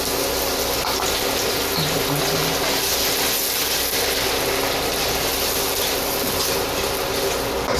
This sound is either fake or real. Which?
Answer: real